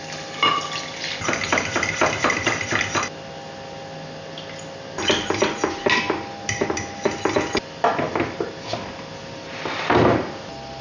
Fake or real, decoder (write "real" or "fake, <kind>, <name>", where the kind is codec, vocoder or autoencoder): real